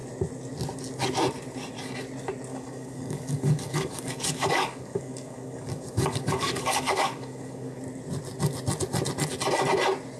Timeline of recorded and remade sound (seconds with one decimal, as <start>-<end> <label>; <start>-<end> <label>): 0.0-2.5 recorded; 2.5-7.8 remade; 7.8-10.2 recorded